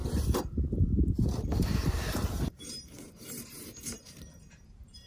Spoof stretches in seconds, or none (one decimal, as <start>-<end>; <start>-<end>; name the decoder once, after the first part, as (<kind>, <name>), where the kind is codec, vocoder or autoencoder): 0.0-5.1 (vocoder, BigVGAN v2)